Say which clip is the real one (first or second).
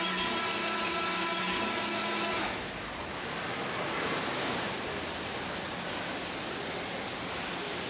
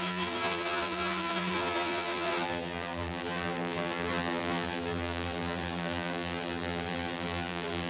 first